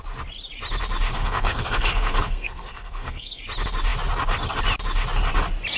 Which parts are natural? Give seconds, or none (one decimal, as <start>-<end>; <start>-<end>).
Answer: 0.0-1.1; 3.4-5.8